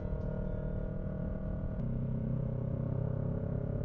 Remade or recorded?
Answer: remade